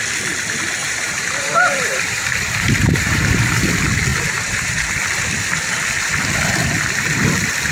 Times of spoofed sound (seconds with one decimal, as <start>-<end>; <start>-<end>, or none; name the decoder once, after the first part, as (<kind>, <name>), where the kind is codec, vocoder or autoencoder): 0.8-3.5 (vocoder, BigVGAN v2); 4.1-5.0

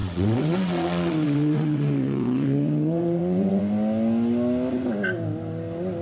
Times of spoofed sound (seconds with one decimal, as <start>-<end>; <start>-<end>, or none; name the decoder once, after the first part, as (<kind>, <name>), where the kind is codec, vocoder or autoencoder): 0.0-3.6 (vocoder, WaveNeXt)

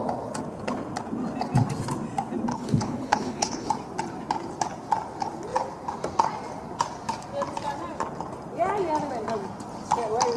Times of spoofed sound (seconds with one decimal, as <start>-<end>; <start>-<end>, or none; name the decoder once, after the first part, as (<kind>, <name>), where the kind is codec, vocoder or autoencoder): 2.5-3.7 (codec, HILCodec)

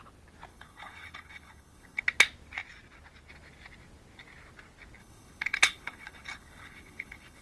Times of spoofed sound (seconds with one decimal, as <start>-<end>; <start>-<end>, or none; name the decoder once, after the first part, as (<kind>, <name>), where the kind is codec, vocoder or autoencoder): 0.5-2.0 (codec, HILCodec); 5.0-7.4